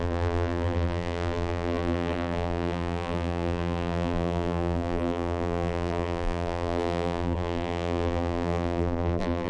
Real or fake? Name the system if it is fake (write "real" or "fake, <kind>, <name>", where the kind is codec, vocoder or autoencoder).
fake, vocoder, BigVGAN v2